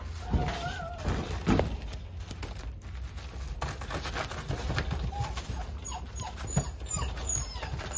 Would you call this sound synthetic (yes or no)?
no